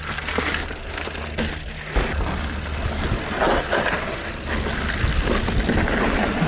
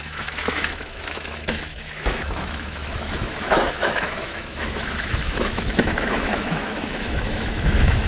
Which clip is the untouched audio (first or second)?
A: first